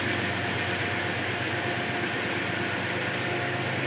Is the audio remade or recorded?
recorded